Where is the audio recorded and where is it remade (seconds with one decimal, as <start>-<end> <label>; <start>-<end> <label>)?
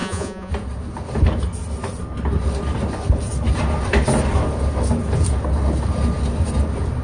0.0-0.5 remade; 0.5-7.0 recorded